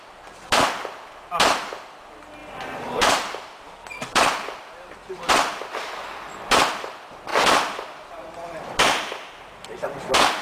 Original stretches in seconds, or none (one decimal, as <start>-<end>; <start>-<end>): 0.0-2.4; 5.3-7.3; 9.3-10.4